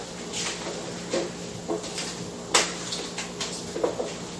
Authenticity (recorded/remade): recorded